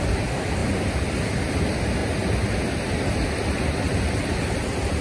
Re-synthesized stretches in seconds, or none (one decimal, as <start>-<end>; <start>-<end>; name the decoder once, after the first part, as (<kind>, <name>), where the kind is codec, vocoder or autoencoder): 0.6-1.5 (vocoder, BigVGAN v2)